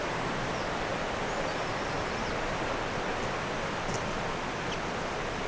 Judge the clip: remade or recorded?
recorded